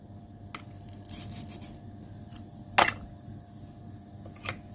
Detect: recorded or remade recorded